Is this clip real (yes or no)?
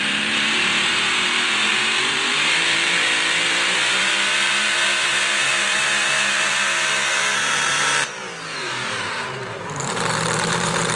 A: no